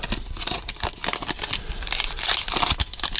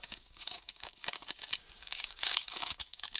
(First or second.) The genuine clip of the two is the first